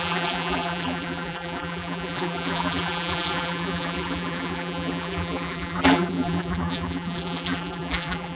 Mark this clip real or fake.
fake